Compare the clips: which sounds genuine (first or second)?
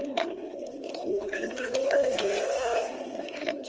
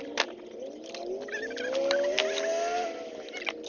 second